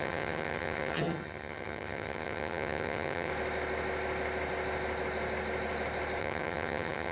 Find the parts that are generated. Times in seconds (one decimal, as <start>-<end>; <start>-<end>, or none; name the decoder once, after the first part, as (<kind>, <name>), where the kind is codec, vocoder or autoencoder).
0.0-3.3 (vocoder, HiFi-GAN); 6.2-7.1